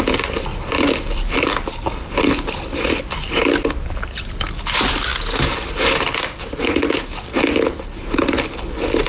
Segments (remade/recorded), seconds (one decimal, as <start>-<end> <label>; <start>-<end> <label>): 0.0-0.5 recorded; 0.5-4.6 remade; 4.6-9.1 recorded